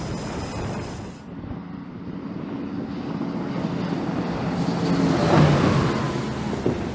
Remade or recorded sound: recorded